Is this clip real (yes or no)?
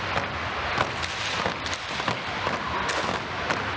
yes